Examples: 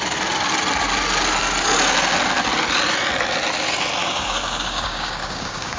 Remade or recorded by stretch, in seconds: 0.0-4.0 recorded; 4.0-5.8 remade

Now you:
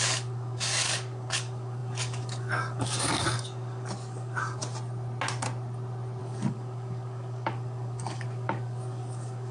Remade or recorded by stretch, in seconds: 0.0-4.6 remade; 4.6-6.2 recorded; 6.2-9.5 remade

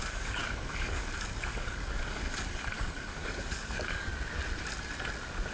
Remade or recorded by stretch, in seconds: 0.0-4.1 remade; 4.1-5.5 recorded